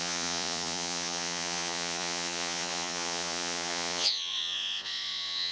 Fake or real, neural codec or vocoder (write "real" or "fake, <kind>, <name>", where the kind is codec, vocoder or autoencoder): fake, vocoder, Vocos